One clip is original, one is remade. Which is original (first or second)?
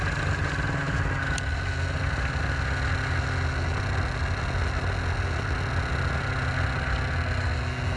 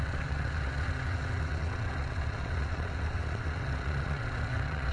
first